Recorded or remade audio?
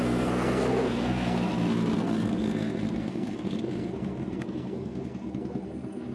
remade